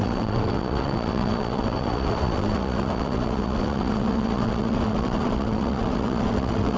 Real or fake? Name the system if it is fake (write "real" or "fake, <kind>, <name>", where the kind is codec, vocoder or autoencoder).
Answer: fake, vocoder, WaveNeXt